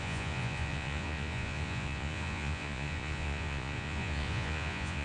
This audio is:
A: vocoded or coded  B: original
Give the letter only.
A